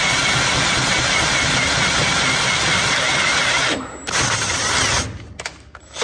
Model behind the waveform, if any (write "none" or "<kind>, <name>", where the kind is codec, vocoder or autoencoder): none